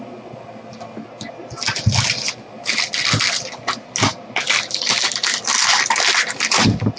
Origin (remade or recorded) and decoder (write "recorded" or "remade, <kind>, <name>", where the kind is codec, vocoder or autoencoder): recorded